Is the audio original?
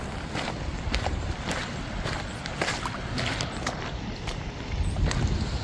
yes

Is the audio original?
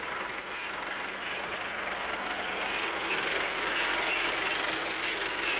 yes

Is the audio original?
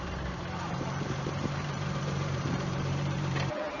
no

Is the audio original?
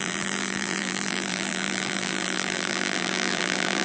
no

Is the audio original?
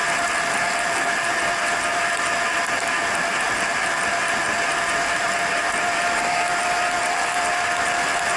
yes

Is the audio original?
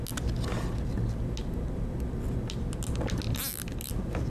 yes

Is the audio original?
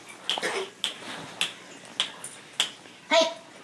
yes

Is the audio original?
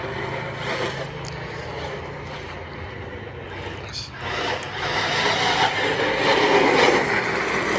yes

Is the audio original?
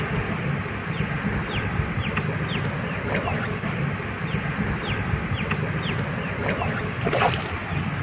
yes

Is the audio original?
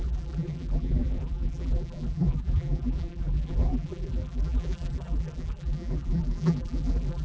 no